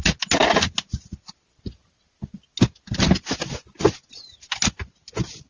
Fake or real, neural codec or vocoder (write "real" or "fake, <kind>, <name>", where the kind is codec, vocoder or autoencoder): real